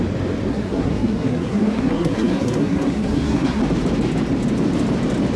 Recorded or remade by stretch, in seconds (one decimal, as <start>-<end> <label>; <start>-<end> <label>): 0.0-0.5 recorded; 0.5-3.6 remade; 3.6-5.4 recorded